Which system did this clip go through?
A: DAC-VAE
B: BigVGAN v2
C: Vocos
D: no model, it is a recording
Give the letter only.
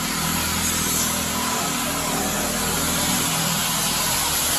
D